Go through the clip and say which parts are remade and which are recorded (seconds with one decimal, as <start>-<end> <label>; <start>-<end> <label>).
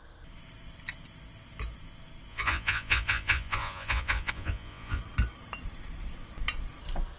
0.0-2.3 recorded; 2.3-5.0 remade; 5.0-7.2 recorded